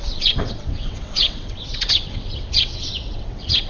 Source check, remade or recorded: remade